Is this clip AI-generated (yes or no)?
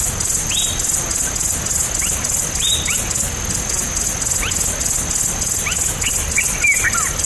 no